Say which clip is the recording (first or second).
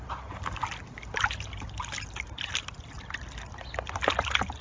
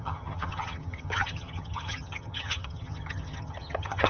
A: first